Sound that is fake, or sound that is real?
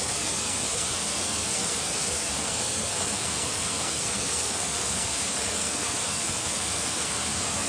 fake